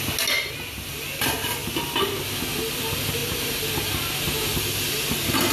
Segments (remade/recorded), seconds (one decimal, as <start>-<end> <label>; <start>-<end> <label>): 0.0-3.2 recorded; 3.2-4.1 remade; 4.1-5.5 recorded